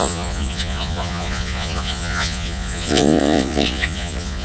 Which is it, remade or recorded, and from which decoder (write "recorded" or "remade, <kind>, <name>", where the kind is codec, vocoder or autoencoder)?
remade, vocoder, Vocos